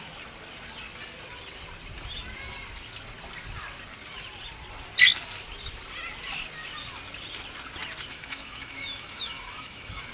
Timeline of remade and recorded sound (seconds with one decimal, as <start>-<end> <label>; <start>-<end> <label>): 0.0-8.1 recorded; 8.1-10.1 remade